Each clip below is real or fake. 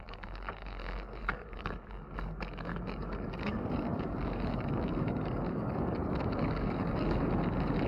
fake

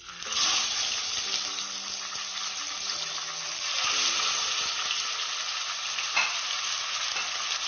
real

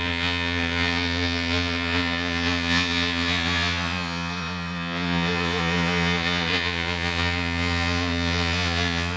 fake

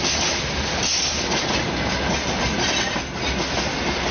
real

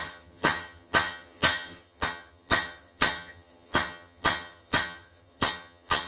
fake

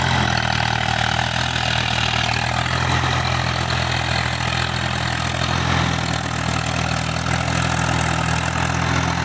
real